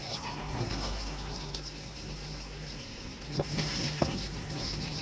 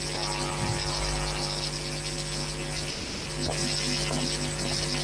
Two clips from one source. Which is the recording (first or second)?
second